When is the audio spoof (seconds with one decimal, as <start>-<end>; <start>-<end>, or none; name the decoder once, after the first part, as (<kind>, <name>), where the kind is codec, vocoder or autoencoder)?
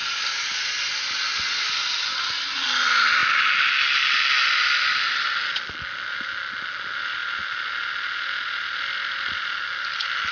none